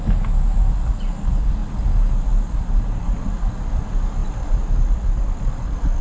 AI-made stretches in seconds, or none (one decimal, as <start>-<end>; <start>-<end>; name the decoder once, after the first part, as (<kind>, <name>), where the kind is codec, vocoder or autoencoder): none